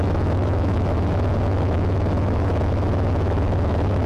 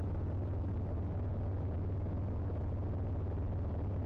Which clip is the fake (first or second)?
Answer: first